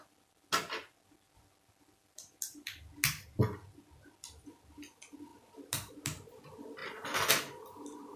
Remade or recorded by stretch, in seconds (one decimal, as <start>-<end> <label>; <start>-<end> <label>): 0.0-8.2 recorded